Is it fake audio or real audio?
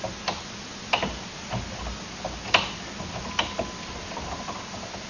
real